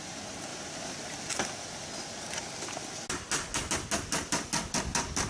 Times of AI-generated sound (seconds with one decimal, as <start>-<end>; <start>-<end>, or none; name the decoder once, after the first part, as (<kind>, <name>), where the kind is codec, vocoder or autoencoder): none